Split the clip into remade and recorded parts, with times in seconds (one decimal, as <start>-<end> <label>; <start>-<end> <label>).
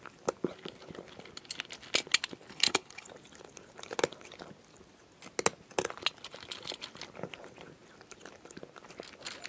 0.0-2.5 recorded; 2.5-3.1 remade; 3.1-9.5 recorded